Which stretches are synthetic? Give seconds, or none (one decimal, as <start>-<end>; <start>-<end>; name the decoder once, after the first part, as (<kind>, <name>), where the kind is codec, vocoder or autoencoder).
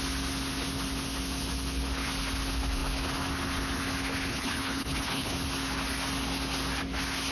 4.3-5.3 (codec, HILCodec)